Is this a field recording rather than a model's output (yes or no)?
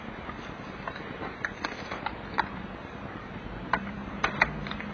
no